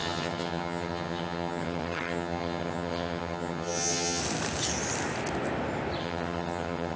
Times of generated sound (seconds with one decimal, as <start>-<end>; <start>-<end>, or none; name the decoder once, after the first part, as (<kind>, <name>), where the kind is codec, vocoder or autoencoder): 0.0-4.2 (vocoder, HiFi-GAN); 6.0-7.0